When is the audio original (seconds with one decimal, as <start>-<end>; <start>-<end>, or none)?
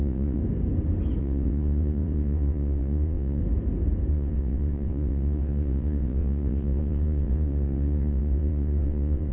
0.4-1.2; 3.4-4.1